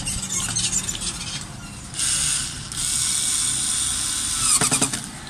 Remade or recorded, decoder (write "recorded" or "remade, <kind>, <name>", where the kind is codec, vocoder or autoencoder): recorded